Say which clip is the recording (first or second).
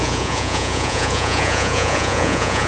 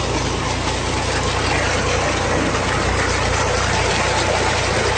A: second